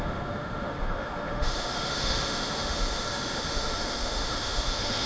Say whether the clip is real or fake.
fake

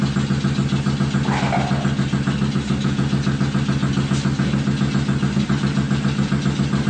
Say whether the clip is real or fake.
real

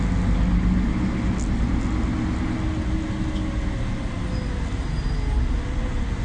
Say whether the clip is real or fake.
real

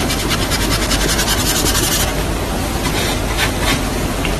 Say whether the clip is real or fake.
real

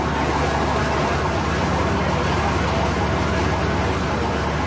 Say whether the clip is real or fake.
real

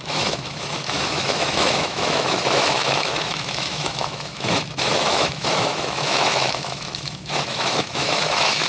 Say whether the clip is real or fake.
fake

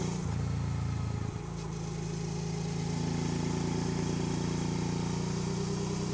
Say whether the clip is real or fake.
real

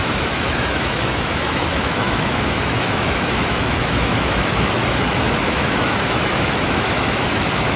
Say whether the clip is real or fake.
fake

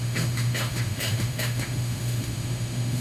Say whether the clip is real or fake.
fake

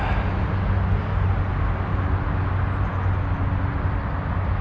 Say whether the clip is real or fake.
real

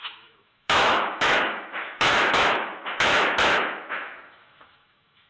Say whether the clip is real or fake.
fake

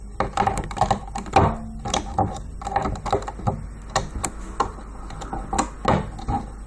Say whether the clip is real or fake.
real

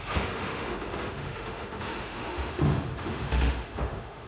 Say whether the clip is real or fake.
fake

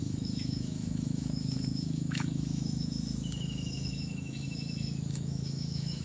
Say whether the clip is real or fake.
fake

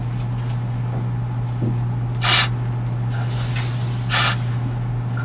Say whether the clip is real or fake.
real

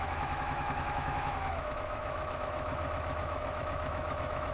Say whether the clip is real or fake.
fake